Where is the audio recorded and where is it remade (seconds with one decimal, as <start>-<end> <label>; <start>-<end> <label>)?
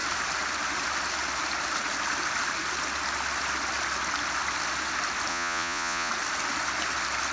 0.0-5.3 recorded; 5.3-6.1 remade; 6.1-7.3 recorded